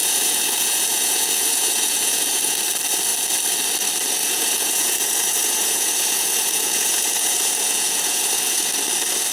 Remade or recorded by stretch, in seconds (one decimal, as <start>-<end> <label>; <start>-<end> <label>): 0.0-2.6 remade; 2.6-4.2 recorded; 4.2-8.7 remade; 8.7-9.3 recorded